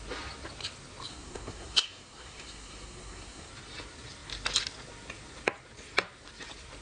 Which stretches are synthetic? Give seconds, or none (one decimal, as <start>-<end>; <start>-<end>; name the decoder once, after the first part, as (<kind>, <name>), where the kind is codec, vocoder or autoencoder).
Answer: 1.1-3.5 (codec, SNAC)